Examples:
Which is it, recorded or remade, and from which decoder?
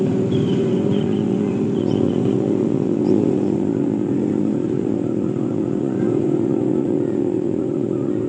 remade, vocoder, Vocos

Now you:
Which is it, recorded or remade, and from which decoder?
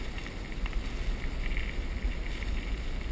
recorded